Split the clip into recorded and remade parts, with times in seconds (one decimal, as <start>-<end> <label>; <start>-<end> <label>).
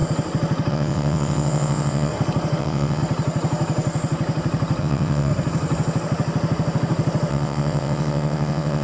0.0-0.7 recorded; 0.7-2.1 remade; 2.1-2.6 recorded; 2.6-3.0 remade; 3.0-4.8 recorded; 4.8-5.3 remade; 5.3-7.3 recorded; 7.3-8.8 remade